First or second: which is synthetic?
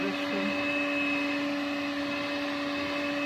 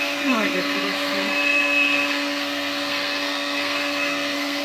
second